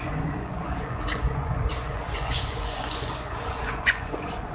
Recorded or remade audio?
remade